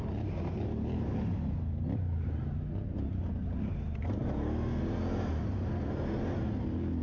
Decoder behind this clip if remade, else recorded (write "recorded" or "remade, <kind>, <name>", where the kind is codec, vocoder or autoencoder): recorded